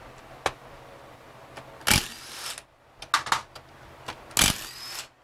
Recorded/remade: recorded